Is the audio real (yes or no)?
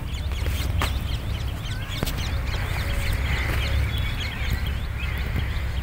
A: yes